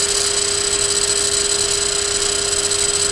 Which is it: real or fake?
real